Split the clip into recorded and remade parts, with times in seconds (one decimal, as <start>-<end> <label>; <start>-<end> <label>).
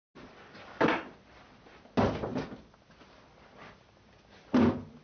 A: 0.0-5.0 recorded